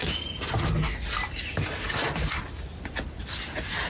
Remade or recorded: recorded